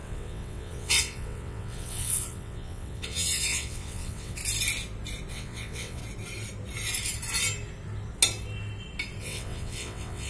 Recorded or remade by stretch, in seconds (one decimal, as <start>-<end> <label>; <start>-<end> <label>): 0.0-4.4 remade; 4.4-5.3 recorded; 5.3-6.0 remade; 6.0-9.2 recorded; 9.2-10.3 remade